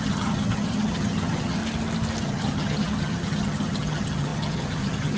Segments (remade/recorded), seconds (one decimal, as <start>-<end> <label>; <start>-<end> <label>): 0.0-1.6 remade; 1.6-2.2 recorded; 2.2-5.2 remade